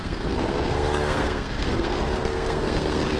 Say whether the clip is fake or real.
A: fake